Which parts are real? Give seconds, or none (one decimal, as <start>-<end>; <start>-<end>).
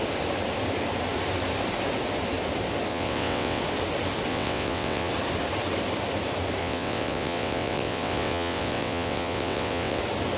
0.0-2.9; 3.6-4.3; 5.1-6.6; 10.0-10.4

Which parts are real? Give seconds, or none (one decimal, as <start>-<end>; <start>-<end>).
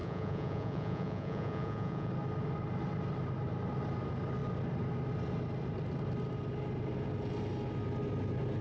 2.1-8.6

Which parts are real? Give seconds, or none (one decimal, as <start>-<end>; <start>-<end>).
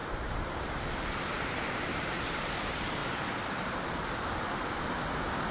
3.0-5.5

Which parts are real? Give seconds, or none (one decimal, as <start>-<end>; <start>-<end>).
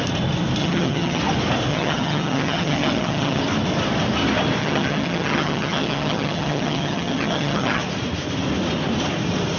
0.0-0.6; 1.2-1.7; 3.4-4.6; 7.8-9.6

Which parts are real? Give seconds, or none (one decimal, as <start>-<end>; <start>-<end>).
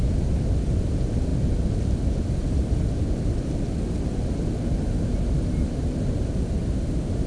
0.0-7.3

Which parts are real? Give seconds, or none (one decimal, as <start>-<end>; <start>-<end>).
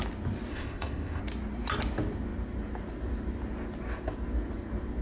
0.0-0.5; 1.2-5.0